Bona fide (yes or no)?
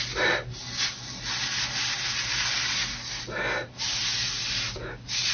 yes